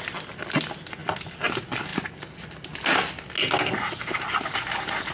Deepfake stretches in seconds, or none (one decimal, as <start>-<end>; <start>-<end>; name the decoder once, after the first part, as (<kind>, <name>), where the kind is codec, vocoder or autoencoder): 1.0-1.5 (vocoder, BigVGAN v2)